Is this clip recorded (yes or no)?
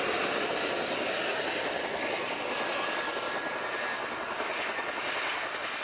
yes